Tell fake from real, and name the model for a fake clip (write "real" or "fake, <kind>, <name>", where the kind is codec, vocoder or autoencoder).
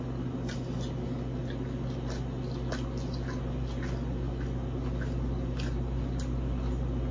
real